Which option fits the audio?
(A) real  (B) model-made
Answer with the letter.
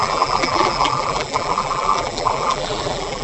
B